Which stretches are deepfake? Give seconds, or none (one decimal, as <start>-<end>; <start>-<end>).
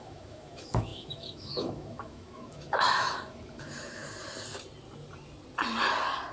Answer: 0.0-4.0